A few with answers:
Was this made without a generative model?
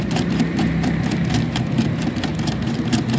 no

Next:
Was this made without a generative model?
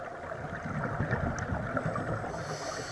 yes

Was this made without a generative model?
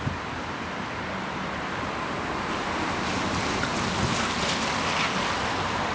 yes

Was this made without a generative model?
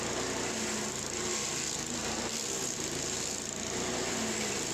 yes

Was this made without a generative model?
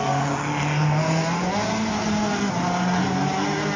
yes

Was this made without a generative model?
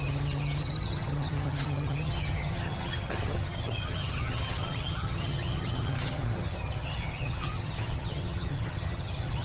no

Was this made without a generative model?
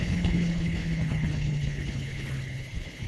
no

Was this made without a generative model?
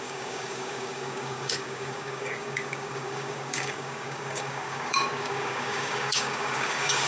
no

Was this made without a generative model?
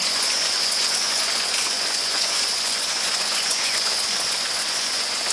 no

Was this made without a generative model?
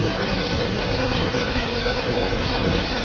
no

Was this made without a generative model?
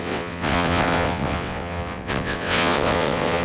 no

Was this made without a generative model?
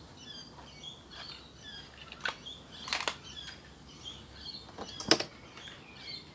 yes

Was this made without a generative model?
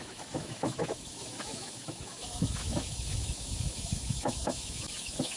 no